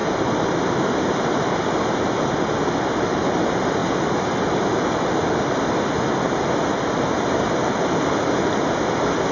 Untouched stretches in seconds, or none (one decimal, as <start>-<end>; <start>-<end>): 0.0-9.3